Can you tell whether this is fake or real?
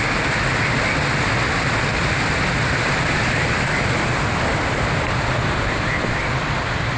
real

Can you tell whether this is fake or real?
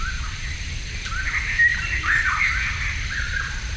real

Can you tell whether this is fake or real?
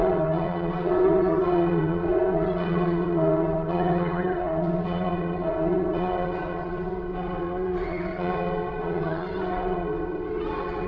fake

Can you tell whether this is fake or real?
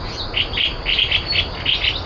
real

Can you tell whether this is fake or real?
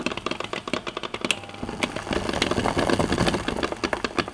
real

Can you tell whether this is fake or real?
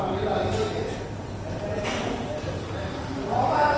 real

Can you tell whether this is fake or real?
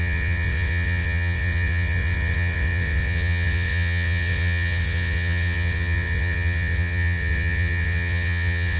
fake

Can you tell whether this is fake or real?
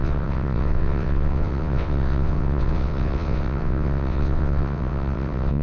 fake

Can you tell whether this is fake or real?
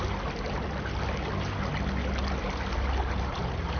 real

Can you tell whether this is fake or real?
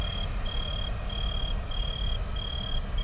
real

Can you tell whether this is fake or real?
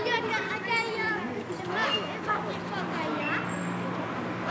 real